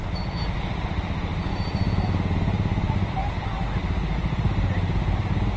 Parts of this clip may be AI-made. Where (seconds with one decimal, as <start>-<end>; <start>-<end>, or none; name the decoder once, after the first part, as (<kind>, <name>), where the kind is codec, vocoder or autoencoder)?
none